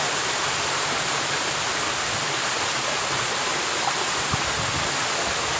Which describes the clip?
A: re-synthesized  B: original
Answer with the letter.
B